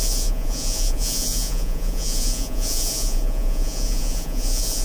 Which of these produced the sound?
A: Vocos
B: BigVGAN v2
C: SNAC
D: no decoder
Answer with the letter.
A